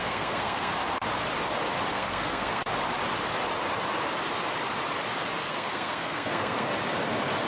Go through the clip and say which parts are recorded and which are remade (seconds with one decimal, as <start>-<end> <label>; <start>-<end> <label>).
0.0-0.7 remade; 0.7-1.9 recorded; 1.9-2.6 remade; 2.6-5.4 recorded; 5.4-6.7 remade; 6.7-7.5 recorded